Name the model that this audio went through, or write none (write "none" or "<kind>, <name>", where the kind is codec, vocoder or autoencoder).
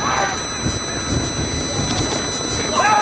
none